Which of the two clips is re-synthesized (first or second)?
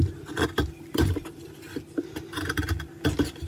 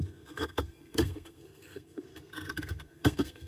second